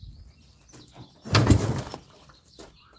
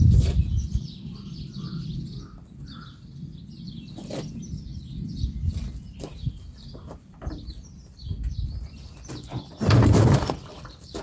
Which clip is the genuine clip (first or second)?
first